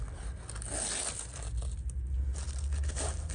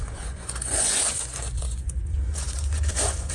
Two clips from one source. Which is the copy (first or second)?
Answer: second